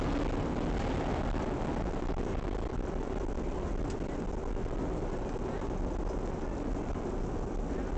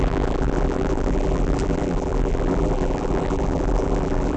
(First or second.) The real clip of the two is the first